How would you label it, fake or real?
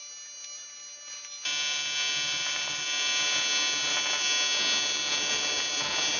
real